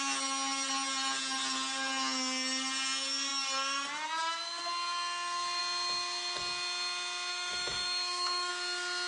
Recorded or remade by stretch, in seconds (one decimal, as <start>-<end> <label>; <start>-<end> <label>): 0.0-7.3 recorded; 7.3-8.5 remade; 8.5-9.1 recorded